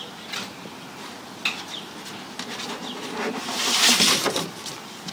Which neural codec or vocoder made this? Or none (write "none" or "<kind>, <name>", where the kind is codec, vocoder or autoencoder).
none